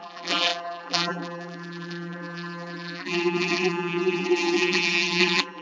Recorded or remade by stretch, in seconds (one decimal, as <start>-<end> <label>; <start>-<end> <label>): 0.0-5.6 remade